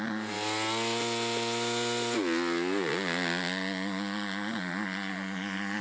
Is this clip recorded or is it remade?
recorded